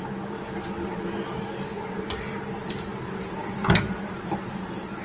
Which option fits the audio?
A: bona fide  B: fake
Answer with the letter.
A